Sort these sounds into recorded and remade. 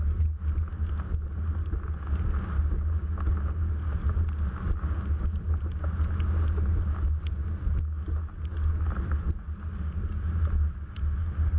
recorded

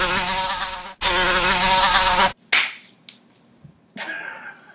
recorded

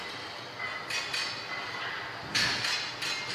recorded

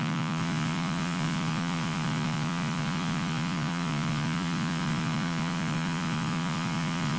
remade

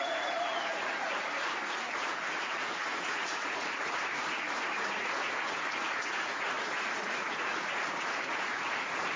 remade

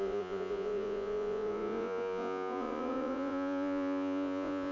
remade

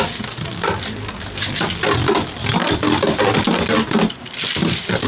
recorded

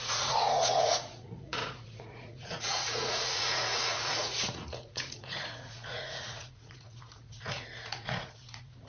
remade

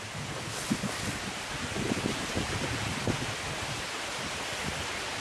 recorded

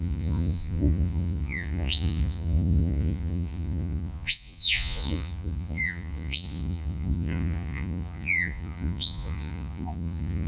remade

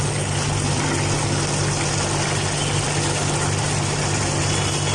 recorded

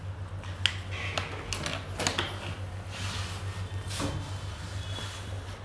recorded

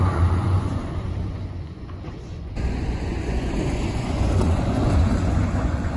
remade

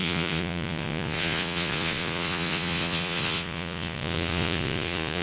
remade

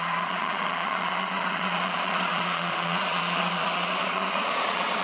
remade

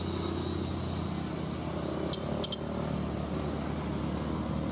recorded